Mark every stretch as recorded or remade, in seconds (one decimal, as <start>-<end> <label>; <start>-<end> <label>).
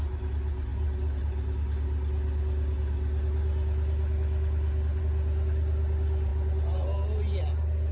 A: 0.0-7.9 recorded